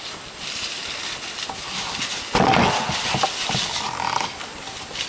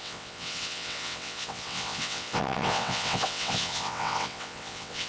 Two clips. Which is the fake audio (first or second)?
second